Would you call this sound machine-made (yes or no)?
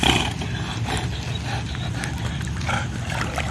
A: no